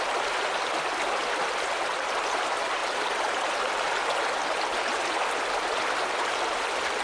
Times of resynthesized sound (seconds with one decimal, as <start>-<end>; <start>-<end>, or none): none